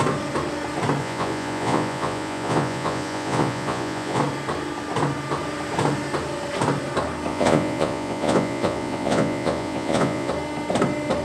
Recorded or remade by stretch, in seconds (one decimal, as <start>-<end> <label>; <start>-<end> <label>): 0.0-1.0 recorded; 1.0-4.2 remade; 4.2-7.3 recorded; 7.3-10.3 remade; 10.3-11.2 recorded